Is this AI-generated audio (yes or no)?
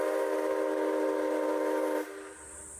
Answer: no